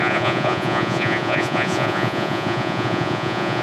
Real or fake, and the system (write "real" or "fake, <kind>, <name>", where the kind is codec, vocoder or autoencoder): fake, vocoder, Vocos